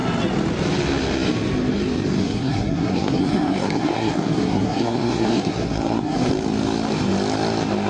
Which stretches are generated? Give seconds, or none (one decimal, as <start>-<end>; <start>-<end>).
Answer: 2.2-6.3